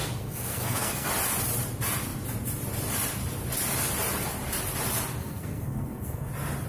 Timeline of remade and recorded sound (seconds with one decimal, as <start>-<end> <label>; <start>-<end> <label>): 0.0-1.1 remade; 1.1-5.2 recorded; 5.2-6.3 remade; 6.3-6.7 recorded